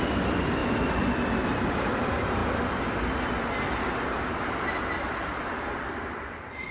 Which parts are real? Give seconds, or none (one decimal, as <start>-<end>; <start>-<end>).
0.6-1.7; 2.4-6.7